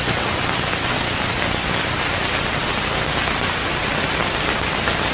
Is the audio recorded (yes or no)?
yes